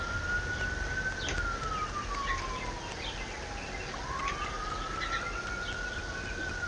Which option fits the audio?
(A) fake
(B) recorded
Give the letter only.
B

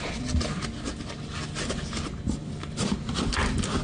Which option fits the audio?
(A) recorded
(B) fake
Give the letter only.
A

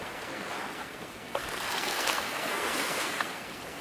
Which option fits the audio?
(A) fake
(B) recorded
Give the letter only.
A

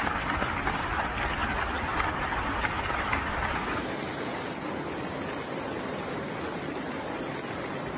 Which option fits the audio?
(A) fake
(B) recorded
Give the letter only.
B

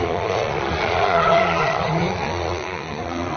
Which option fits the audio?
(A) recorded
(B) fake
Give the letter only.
B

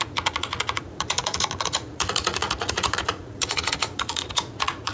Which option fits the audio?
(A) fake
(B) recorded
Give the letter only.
A